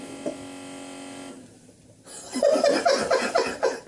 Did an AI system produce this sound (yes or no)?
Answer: no